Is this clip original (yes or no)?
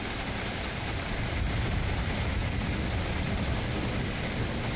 yes